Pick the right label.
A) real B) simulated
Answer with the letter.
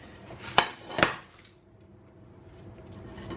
B